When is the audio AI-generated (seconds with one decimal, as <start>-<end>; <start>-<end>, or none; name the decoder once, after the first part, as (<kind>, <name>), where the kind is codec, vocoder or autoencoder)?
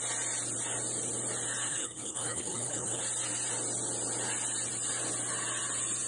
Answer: 1.7-3.0 (codec, HILCodec)